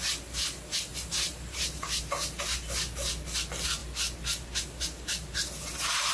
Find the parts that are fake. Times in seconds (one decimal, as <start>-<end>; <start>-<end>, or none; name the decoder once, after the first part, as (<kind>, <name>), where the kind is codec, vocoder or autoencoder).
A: 0.9-2.1 (vocoder, BigVGAN v2)